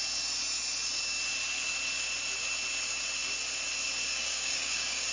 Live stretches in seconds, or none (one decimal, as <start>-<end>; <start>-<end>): 0.0-4.1